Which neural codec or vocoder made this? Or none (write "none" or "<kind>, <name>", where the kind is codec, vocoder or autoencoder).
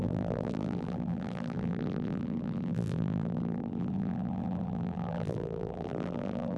vocoder, BigVGAN v2